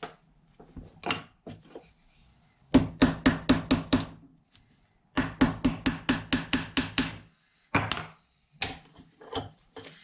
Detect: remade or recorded recorded